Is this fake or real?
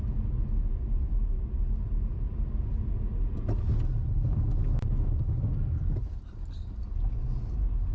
real